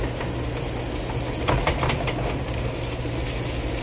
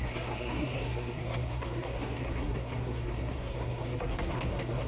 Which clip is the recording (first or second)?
first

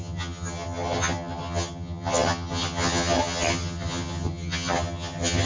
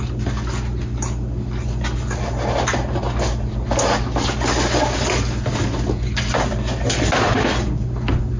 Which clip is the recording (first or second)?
second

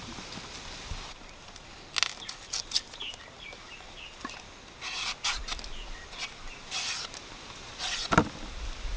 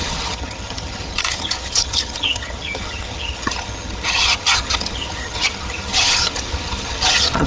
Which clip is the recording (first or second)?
first